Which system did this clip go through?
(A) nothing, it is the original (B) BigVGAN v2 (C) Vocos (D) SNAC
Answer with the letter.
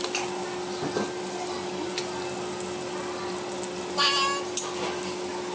A